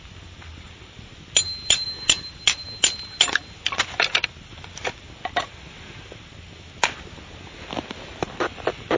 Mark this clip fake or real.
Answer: real